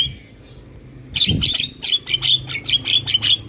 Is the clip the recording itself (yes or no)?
yes